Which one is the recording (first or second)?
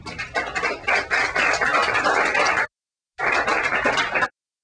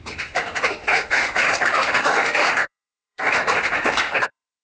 first